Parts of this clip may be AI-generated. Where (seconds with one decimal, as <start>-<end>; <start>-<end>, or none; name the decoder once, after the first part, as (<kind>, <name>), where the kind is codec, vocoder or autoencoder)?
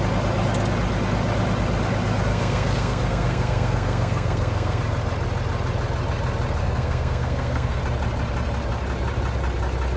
2.3-4.8 (codec, SNAC); 6.6-7.8